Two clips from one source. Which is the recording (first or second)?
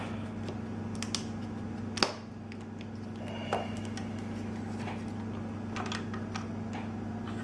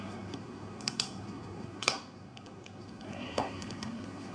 first